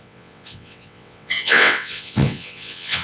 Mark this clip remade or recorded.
remade